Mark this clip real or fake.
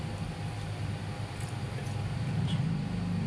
real